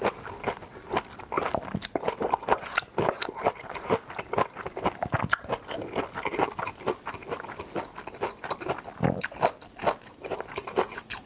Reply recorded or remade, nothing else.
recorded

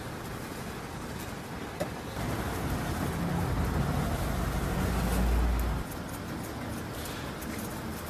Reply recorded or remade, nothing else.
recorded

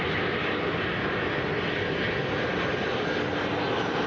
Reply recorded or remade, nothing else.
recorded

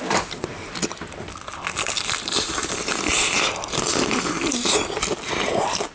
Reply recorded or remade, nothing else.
recorded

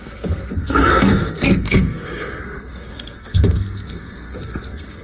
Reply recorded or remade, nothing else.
remade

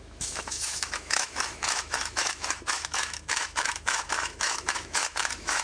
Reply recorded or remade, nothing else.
remade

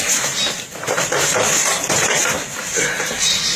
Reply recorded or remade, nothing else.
remade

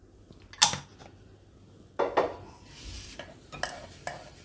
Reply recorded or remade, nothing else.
recorded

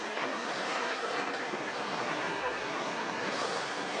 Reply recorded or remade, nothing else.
remade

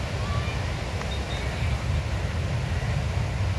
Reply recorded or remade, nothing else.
recorded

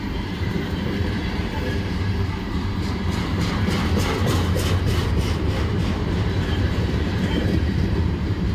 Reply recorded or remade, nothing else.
remade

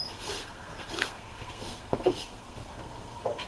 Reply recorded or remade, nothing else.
remade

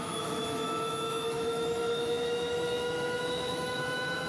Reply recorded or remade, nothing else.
remade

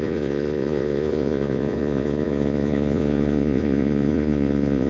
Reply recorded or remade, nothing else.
remade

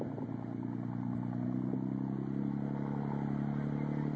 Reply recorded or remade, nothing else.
recorded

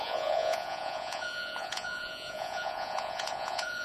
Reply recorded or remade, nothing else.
remade